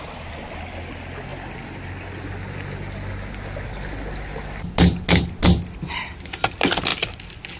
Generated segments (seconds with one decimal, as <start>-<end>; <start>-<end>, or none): none